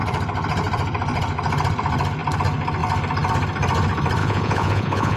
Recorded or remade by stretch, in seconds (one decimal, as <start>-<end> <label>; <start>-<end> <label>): 0.0-4.2 recorded; 4.2-5.2 remade